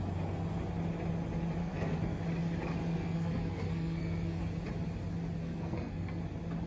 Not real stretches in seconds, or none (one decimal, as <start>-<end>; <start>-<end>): 1.6-2.2; 2.8-4.4; 5.4-6.2